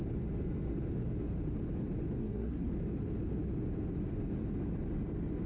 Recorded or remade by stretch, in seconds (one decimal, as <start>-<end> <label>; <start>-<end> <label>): 0.0-2.2 recorded; 2.2-2.7 remade; 2.7-5.5 recorded